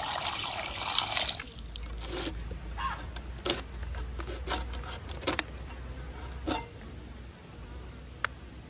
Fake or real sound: real